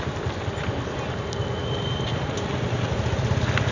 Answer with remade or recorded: recorded